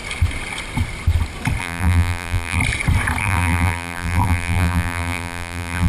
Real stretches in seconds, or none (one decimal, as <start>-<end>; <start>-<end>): 0.0-1.6; 2.6-3.2